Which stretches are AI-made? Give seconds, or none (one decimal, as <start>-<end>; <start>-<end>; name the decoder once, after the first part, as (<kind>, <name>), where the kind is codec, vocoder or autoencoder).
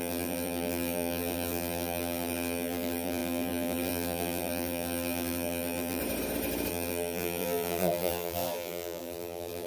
0.0-6.0 (vocoder, BigVGAN v2); 6.7-9.7